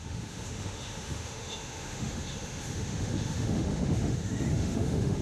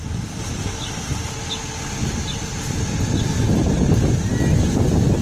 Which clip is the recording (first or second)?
second